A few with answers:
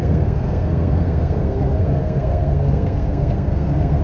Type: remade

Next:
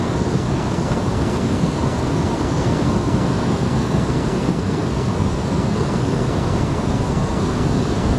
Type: remade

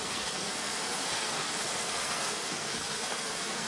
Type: remade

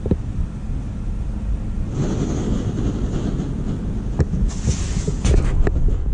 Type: recorded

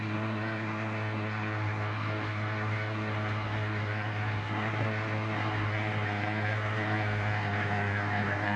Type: remade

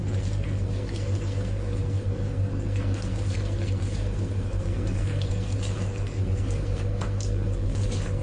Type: remade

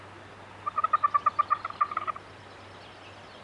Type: recorded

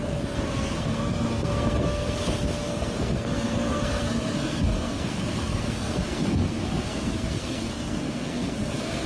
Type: remade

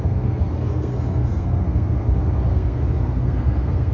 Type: remade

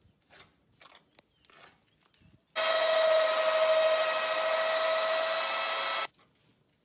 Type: recorded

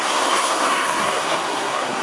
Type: remade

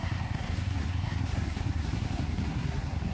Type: remade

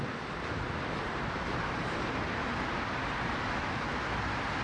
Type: recorded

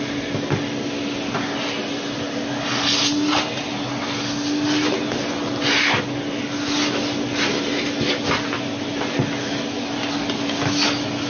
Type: recorded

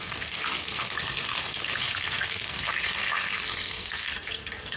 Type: remade